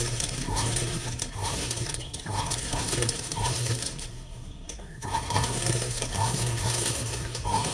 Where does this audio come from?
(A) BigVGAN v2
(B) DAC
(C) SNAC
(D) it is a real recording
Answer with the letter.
C